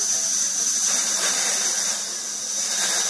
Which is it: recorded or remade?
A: recorded